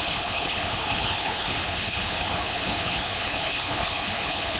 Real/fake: fake